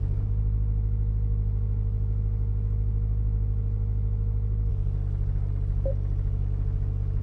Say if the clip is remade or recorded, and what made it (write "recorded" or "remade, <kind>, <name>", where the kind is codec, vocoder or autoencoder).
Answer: recorded